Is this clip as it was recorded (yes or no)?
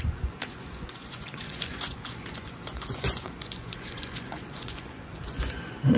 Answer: no